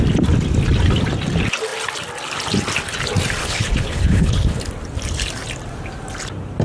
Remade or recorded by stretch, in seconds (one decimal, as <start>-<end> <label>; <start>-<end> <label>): 0.0-3.4 recorded; 3.4-4.6 remade; 4.6-6.6 recorded